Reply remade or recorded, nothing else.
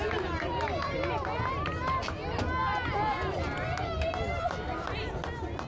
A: recorded